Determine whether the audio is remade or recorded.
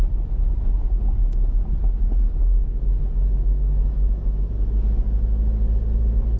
recorded